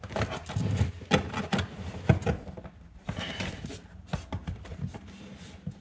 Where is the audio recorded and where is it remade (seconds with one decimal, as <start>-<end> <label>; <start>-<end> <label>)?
0.0-5.8 recorded